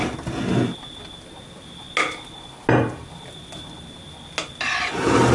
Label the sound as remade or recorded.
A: recorded